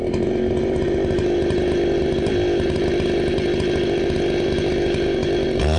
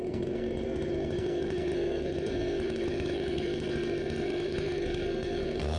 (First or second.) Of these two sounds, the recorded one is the first